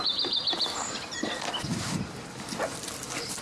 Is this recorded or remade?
recorded